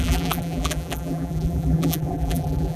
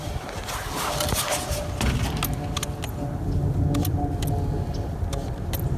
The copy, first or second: first